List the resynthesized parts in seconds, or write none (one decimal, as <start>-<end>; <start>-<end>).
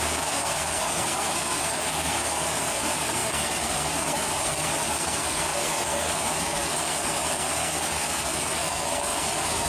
0.0-9.7